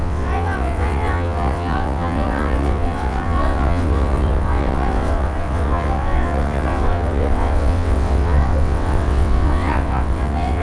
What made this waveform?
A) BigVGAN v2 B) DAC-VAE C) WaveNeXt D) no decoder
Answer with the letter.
C